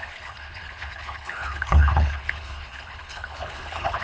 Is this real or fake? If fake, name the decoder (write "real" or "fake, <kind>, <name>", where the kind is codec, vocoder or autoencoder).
fake, codec, HILCodec